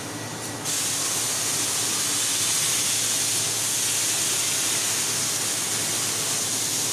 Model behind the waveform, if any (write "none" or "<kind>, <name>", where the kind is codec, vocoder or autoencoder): none